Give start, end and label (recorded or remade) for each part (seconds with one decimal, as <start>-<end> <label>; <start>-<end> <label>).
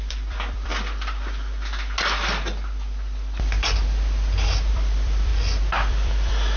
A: 0.0-0.7 remade; 0.7-4.7 recorded; 4.7-5.3 remade; 5.3-5.9 recorded; 5.9-6.6 remade